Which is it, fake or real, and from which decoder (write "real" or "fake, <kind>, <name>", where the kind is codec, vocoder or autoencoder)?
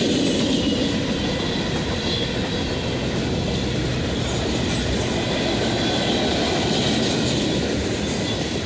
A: real